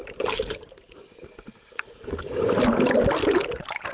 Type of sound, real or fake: real